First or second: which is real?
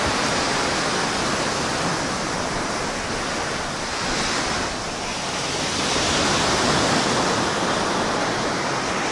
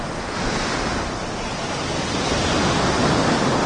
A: second